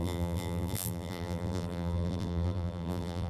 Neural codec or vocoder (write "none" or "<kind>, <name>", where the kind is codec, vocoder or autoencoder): vocoder, BigVGAN v2